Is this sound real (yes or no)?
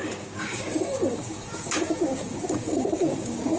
no